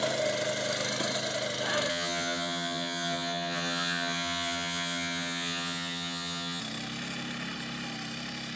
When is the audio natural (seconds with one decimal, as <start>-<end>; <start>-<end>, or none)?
0.0-1.9; 6.6-8.6